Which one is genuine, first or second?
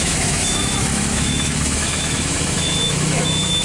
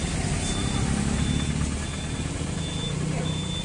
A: second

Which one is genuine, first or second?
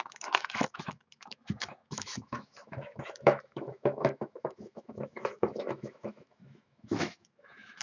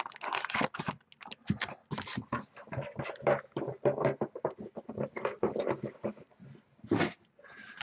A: second